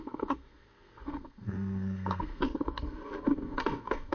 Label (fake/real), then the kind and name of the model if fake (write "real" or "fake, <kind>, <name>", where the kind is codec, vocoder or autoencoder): fake, codec, SNAC